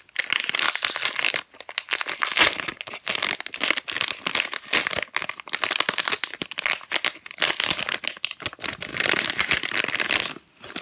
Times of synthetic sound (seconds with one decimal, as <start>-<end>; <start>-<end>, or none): 8.9-9.7